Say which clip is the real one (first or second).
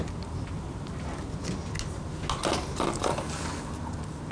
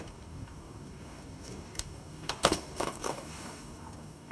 first